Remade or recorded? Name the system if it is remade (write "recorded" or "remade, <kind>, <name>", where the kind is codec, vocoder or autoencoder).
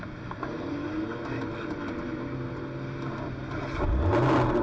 recorded